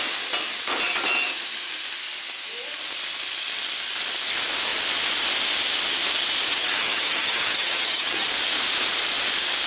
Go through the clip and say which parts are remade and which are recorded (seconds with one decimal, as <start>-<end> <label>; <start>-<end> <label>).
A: 0.0-6.5 recorded; 6.5-8.3 remade; 8.3-9.7 recorded